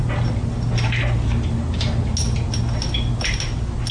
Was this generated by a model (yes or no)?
no